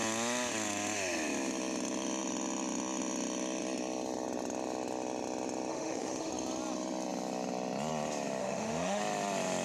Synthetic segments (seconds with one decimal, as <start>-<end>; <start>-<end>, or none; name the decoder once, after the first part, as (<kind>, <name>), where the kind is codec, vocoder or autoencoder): 5.7-6.3 (autoencoder, DAC-VAE); 8.4-9.0